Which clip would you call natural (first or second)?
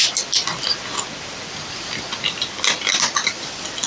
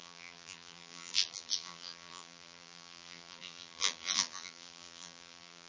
first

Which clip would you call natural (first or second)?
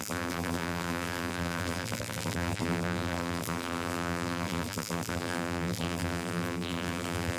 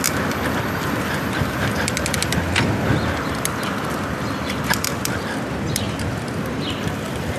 second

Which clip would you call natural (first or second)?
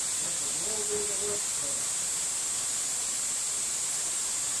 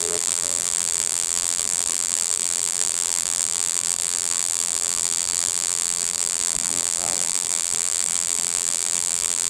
first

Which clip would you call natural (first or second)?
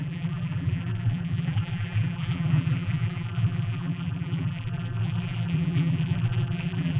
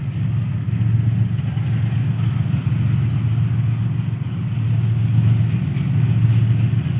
second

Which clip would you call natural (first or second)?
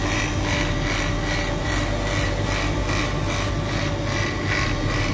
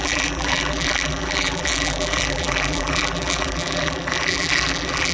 first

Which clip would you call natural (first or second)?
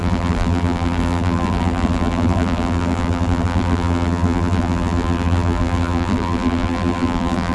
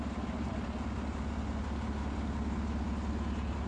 second